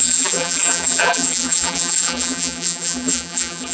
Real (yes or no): no